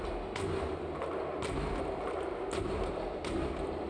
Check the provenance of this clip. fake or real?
real